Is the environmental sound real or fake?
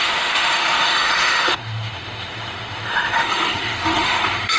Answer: fake